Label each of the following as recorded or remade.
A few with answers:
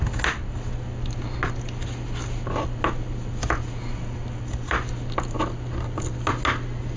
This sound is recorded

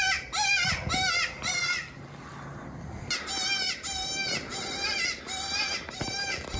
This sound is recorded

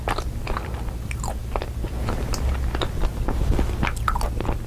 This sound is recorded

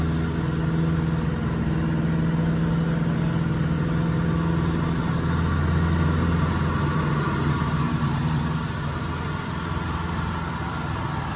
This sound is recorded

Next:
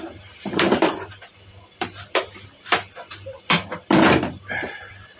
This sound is remade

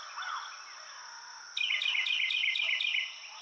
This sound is recorded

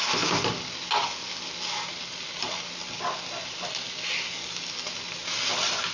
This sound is recorded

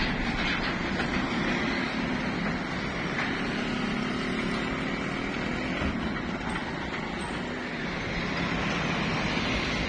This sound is recorded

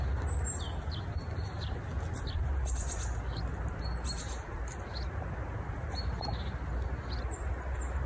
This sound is recorded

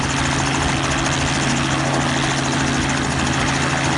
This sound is recorded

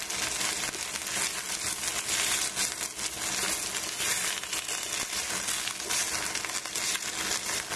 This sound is recorded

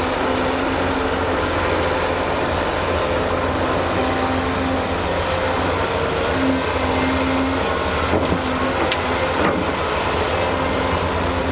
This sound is recorded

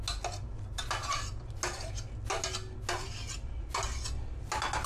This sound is recorded